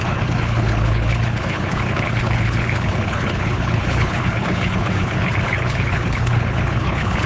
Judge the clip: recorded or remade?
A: remade